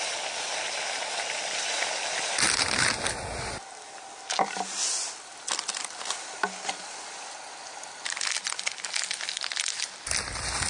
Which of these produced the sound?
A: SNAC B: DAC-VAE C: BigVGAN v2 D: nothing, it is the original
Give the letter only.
D